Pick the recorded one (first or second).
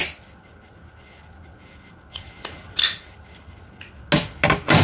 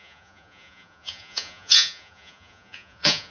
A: first